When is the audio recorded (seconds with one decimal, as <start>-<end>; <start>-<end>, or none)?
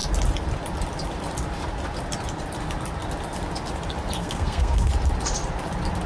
0.0-4.2; 4.9-6.1